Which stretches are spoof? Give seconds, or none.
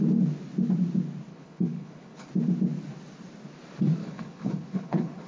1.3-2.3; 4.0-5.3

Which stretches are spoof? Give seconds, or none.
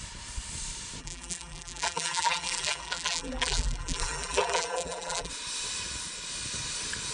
1.0-5.3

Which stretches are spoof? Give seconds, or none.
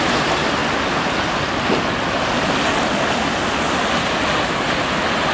none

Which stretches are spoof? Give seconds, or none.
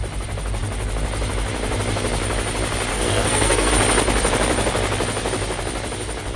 2.9-3.7